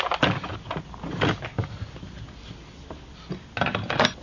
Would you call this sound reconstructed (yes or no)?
no